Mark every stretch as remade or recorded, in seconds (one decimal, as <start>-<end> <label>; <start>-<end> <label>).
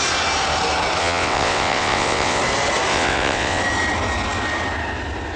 0.0-1.0 recorded; 1.0-2.4 remade; 2.4-2.9 recorded; 2.9-3.6 remade; 3.6-5.4 recorded